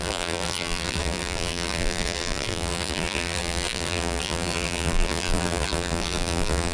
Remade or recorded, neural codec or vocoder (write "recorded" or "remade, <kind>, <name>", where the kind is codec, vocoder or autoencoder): remade, vocoder, BigVGAN v2